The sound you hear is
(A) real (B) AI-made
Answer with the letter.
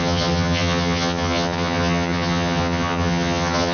B